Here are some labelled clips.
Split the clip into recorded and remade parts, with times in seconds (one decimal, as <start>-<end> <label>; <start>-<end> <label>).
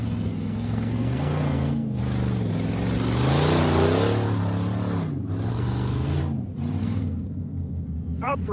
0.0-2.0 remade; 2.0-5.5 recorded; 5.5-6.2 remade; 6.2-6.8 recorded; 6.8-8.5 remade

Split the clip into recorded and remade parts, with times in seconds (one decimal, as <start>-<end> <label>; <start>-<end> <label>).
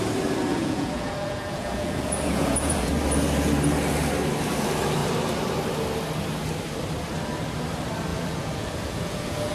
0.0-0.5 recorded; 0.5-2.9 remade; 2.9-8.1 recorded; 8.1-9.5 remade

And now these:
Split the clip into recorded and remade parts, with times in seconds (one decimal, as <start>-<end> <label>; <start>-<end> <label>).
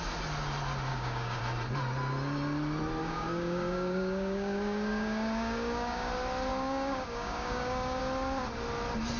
0.0-0.9 recorded; 0.9-1.4 remade; 1.4-3.0 recorded; 3.0-6.1 remade; 6.1-6.5 recorded; 6.5-8.0 remade; 8.0-9.2 recorded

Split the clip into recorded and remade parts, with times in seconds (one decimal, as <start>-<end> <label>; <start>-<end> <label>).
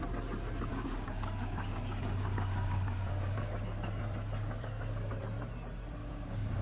0.0-0.7 recorded; 0.7-3.5 remade; 3.5-4.4 recorded; 4.4-5.1 remade; 5.1-6.0 recorded; 6.0-6.6 remade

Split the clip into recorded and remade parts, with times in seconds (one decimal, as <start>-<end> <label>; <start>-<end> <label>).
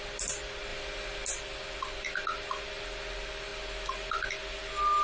0.0-5.0 recorded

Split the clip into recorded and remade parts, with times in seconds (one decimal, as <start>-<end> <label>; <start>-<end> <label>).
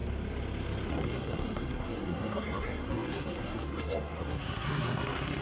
0.0-0.9 recorded; 0.9-5.4 remade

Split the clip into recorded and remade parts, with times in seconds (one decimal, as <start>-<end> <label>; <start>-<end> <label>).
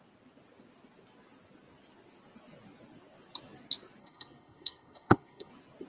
0.0-4.0 recorded; 4.0-5.5 remade; 5.5-5.9 recorded